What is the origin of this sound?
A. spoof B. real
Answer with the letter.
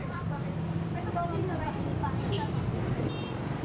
B